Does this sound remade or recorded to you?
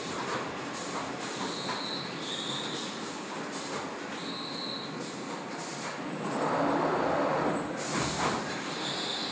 recorded